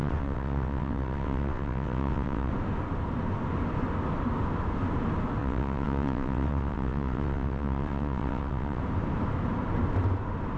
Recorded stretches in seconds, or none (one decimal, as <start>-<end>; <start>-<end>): 2.5-5.4; 8.8-10.6

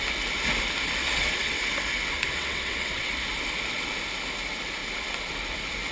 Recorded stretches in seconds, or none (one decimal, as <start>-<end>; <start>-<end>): 0.0-1.0; 1.6-2.1; 3.1-5.9

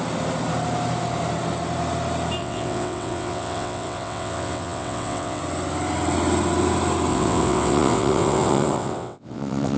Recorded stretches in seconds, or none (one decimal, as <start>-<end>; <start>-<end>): 0.0-2.4; 5.4-7.1

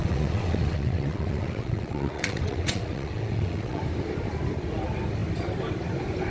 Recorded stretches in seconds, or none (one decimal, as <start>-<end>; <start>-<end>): 3.8-6.3

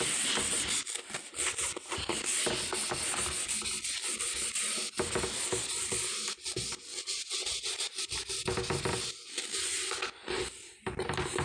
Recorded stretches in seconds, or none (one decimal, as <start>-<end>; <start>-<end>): 0.0-6.9; 7.7-11.4

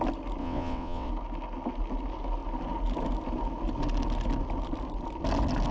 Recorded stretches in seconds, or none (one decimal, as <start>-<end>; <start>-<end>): 0.0-0.4; 1.1-5.7

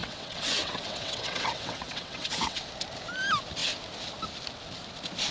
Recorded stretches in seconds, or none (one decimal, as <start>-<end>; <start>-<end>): 2.6-5.3